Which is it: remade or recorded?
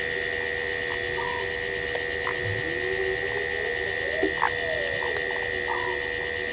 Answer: recorded